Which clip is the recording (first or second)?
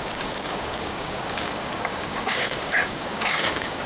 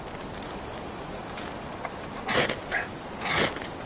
second